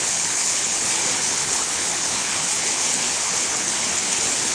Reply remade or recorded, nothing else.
remade